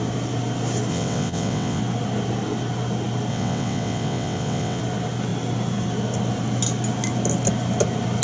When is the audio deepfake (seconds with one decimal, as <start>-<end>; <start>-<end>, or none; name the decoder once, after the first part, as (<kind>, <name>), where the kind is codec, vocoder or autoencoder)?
0.9-1.8 (vocoder, WaveNeXt); 3.3-4.8